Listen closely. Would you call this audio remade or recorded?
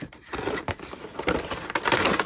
recorded